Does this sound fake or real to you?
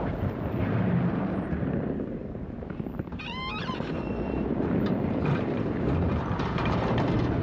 fake